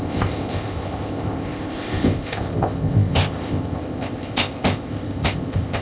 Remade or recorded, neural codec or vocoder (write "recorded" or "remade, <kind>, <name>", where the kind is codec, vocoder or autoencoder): remade, codec, ZipCodec